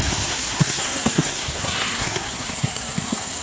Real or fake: fake